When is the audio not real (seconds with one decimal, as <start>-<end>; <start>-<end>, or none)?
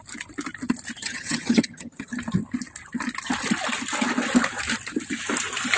1.0-2.1